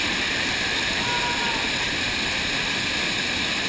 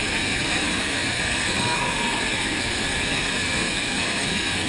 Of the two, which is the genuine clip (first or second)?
first